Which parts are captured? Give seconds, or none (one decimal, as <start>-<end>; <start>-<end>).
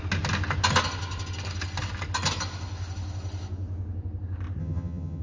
0.0-4.6